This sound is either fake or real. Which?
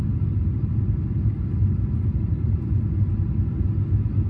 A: real